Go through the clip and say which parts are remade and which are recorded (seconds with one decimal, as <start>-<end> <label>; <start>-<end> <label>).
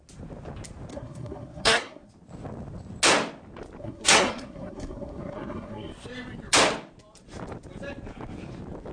0.0-0.9 recorded; 0.9-2.1 remade; 2.1-3.8 recorded; 3.8-5.9 remade; 5.9-8.9 recorded